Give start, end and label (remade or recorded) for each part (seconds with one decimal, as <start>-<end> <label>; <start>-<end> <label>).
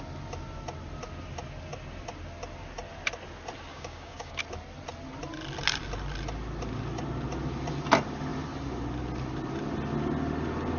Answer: 0.0-3.7 recorded; 3.7-4.4 remade; 4.4-10.8 recorded